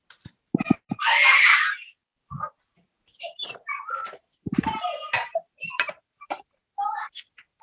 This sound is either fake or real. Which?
fake